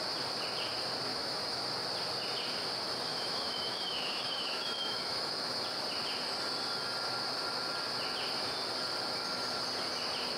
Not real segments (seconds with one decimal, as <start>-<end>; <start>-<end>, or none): 1.1-1.6; 3.1-5.6